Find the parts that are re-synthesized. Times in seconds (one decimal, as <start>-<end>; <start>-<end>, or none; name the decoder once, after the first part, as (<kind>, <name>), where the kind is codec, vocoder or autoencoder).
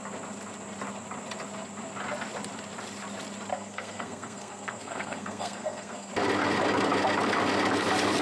3.5-6.1 (codec, SNAC)